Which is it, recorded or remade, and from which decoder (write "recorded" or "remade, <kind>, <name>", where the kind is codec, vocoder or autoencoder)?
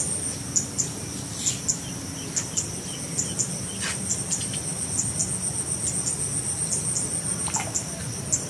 recorded